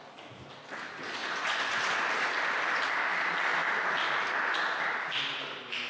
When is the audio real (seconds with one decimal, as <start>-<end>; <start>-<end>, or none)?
0.0-1.2; 1.8-5.9